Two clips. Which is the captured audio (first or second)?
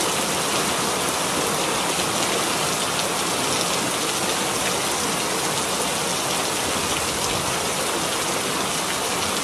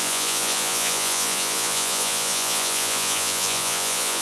first